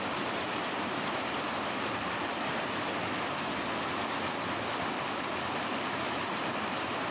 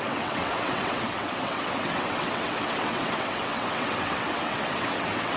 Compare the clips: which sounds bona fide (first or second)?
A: first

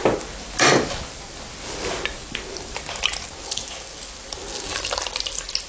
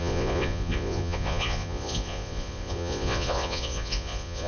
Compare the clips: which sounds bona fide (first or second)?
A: first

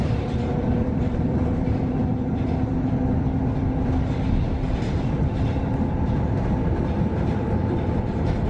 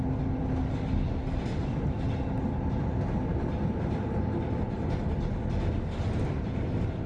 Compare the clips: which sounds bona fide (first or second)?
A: second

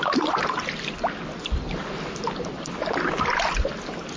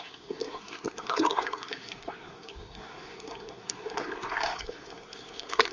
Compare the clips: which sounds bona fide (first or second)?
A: first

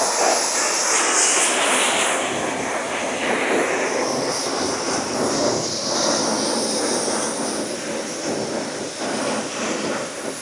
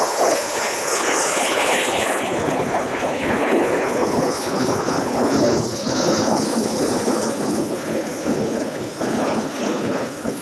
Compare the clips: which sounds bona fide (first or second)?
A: first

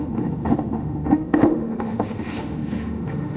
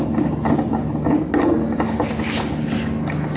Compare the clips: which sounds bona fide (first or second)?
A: second